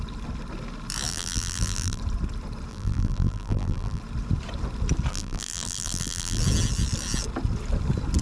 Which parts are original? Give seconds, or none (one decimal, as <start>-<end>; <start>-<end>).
0.0-1.1; 2.0-2.7; 4.0-5.1; 6.4-8.2